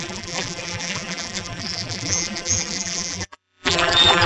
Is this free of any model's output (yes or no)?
no